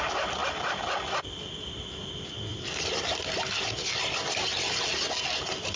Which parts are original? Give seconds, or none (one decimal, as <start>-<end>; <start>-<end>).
0.0-5.8